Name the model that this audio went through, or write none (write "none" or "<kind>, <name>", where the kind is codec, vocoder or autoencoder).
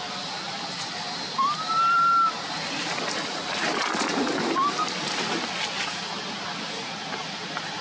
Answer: none